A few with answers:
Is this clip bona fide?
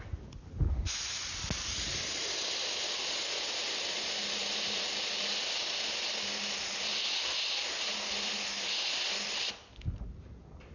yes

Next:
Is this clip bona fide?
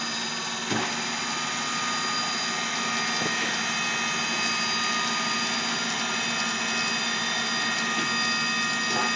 yes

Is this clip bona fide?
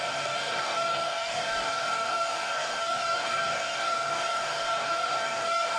no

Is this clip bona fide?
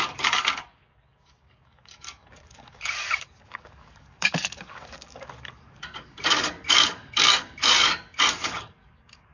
no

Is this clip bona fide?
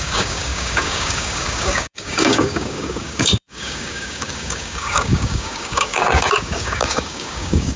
no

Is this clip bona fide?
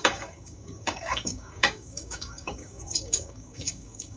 no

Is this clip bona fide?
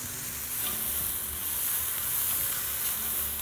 yes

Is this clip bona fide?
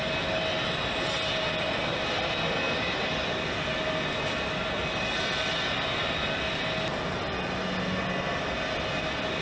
yes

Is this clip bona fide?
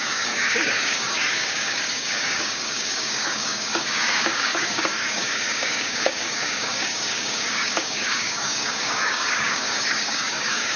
no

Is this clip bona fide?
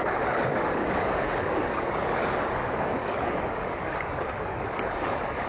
no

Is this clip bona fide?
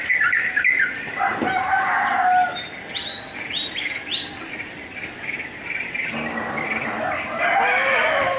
yes